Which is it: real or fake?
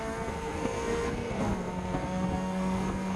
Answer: fake